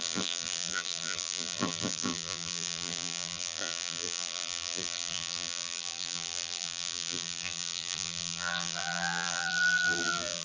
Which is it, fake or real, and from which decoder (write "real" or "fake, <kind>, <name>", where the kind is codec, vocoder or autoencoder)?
fake, vocoder, BigVGAN v2